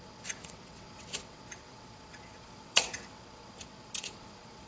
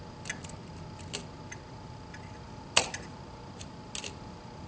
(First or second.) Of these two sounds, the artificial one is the first